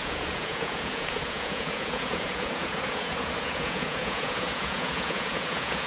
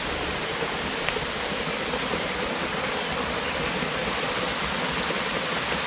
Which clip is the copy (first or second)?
first